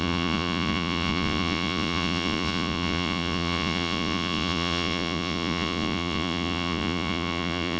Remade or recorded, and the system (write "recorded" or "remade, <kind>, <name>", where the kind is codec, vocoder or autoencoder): remade, vocoder, Vocos